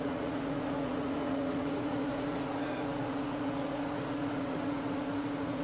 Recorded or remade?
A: remade